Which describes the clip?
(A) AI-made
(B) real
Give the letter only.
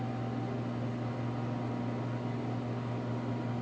B